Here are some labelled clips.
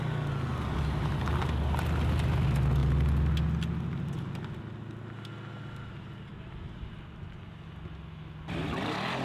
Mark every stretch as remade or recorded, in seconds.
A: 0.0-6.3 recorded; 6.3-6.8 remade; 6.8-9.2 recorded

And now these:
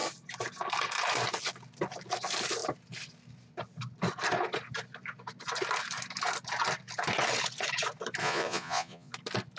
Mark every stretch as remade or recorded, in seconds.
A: 0.0-8.2 recorded; 8.2-9.1 remade; 9.1-9.6 recorded

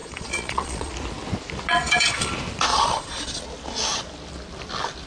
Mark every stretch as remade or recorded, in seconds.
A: 0.0-0.9 remade; 0.9-1.7 recorded; 1.7-2.3 remade; 2.3-2.7 recorded; 2.7-3.4 remade; 3.4-5.1 recorded

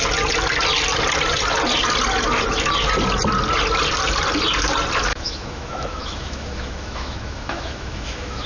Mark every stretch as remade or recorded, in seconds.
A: 0.0-5.1 recorded; 5.1-8.5 remade